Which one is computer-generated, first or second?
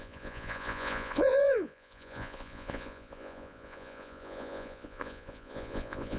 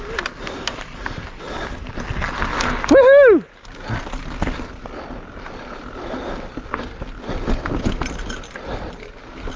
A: first